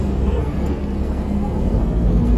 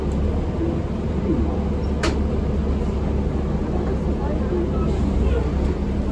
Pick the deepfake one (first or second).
first